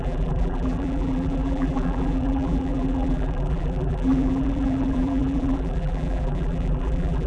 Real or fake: fake